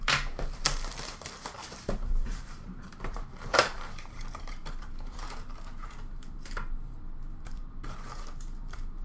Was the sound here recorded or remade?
remade